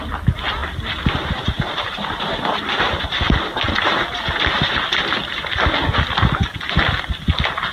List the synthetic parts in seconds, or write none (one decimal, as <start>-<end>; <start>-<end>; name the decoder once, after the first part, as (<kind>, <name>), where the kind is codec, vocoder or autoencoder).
none